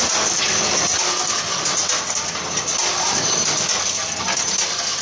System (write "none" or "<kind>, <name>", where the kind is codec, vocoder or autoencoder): none